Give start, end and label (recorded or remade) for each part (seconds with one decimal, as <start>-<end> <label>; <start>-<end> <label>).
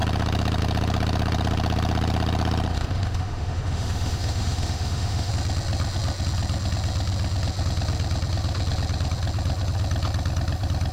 0.0-2.7 recorded; 2.7-5.3 remade; 5.3-10.9 recorded